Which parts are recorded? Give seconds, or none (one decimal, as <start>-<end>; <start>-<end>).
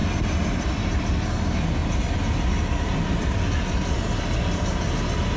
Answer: 0.9-1.8; 5.0-5.4